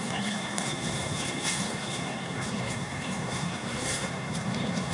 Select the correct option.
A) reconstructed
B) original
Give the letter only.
A